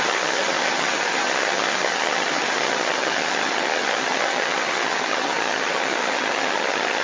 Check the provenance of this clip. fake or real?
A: fake